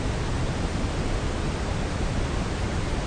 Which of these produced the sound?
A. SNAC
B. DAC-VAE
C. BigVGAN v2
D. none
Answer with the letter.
D